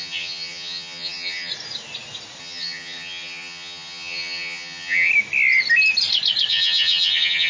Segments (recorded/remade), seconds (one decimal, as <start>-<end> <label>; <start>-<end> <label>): 0.0-1.5 remade; 1.5-2.4 recorded; 2.4-5.1 remade; 5.1-6.5 recorded; 6.5-7.5 remade